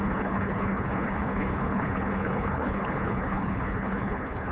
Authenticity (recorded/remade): remade